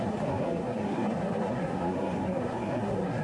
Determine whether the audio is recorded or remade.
remade